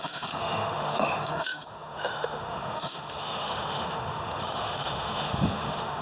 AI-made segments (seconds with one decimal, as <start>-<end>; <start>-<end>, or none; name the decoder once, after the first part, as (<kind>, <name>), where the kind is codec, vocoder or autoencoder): 0.0-6.0 (autoencoder, DAC-VAE)